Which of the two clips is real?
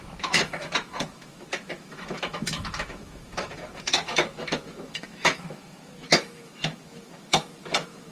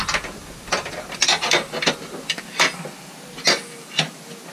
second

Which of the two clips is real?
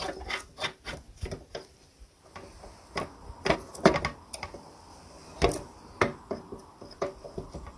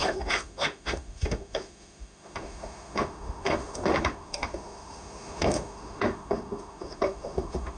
first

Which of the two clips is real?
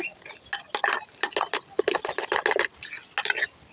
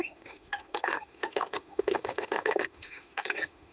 first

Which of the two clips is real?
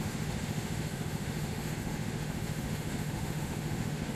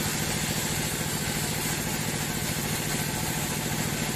second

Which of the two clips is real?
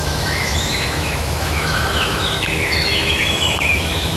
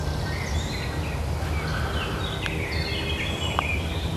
second